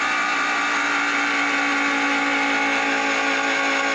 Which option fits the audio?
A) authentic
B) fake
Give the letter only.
A